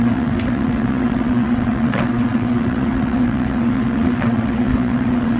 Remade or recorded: remade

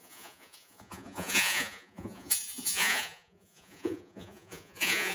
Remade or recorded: remade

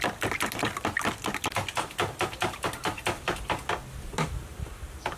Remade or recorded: recorded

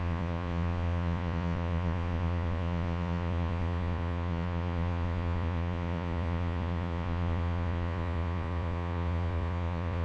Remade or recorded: remade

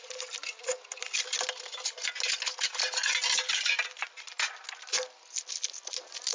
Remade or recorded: recorded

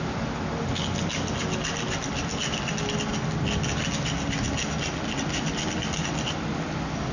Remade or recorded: recorded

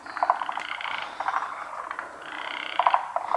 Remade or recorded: recorded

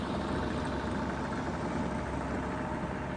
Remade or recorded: recorded